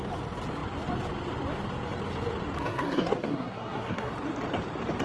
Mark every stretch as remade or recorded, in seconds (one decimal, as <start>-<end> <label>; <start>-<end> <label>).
0.0-2.6 recorded; 2.6-4.1 remade; 4.1-5.0 recorded